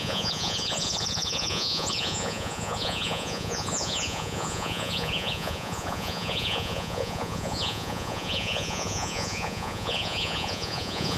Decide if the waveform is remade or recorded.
remade